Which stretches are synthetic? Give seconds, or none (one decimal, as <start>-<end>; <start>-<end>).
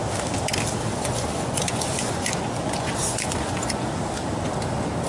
0.9-4.0